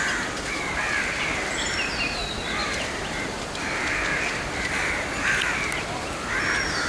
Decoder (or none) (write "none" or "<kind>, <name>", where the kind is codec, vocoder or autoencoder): vocoder, BigVGAN v2